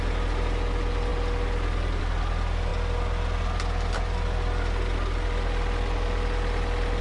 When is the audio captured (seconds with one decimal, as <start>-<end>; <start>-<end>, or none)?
0.0-7.0